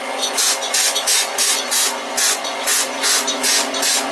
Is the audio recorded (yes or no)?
no